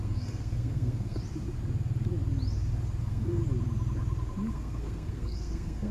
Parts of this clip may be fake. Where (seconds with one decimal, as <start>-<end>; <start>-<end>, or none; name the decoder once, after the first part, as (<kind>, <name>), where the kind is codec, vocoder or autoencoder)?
0.0-1.2 (codec, SNAC); 3.0-3.4; 4.5-5.9